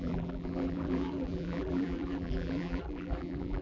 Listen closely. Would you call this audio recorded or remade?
remade